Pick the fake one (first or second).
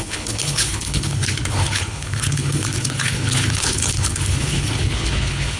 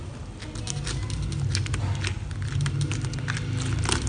first